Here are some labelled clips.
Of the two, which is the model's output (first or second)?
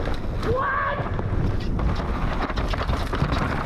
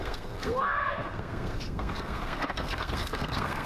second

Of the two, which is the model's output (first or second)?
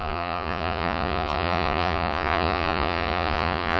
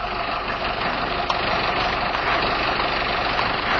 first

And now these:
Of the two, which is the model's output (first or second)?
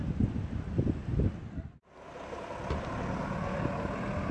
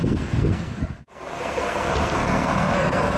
second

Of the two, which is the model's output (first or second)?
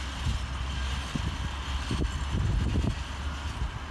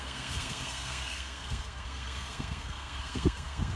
second